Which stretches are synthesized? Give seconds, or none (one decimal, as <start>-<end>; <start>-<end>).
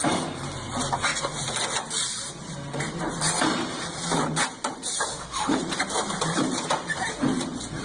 5.1-5.6